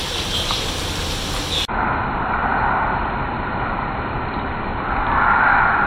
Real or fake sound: real